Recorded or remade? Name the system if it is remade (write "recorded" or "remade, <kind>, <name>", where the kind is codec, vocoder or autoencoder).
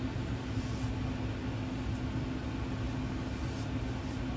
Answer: recorded